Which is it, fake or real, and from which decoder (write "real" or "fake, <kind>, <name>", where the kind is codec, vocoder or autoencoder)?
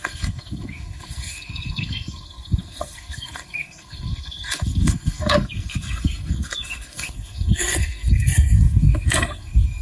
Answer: fake, codec, SNAC